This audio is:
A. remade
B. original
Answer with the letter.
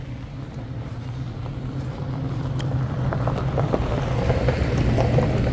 B